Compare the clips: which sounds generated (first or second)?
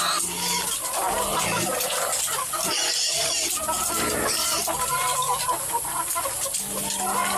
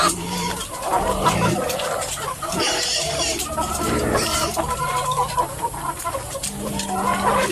second